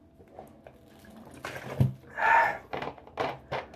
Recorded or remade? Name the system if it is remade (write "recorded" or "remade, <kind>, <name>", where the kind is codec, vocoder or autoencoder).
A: recorded